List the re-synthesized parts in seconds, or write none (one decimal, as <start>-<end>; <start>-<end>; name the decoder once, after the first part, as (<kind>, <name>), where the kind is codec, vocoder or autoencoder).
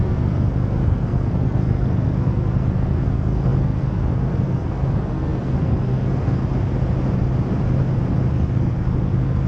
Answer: 0.0-6.4 (codec, SNAC); 8.3-9.5